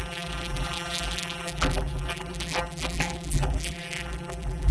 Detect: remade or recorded remade